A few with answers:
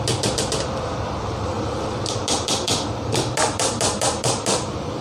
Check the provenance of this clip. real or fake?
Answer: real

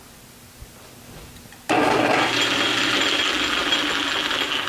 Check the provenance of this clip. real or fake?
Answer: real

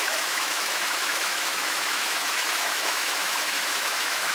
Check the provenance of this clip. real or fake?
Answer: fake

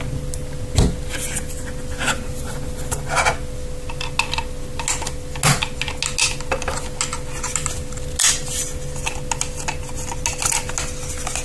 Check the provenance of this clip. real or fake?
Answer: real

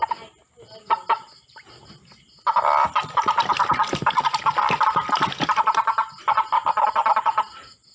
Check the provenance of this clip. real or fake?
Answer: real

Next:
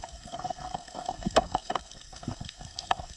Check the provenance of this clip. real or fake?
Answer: fake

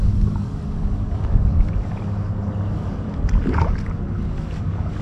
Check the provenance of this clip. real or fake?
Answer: fake